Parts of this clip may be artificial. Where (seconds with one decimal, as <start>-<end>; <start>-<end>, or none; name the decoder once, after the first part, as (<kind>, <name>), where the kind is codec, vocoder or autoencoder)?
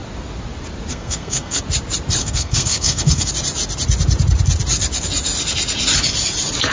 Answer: 0.9-1.6 (codec, SNAC); 2.2-3.3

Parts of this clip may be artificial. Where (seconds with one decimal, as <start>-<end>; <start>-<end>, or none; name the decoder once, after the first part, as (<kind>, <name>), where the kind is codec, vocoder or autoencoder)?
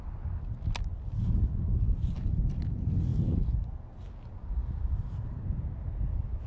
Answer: none